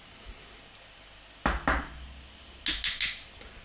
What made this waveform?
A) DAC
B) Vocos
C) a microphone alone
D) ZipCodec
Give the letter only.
C